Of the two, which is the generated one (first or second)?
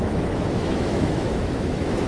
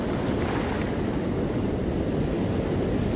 first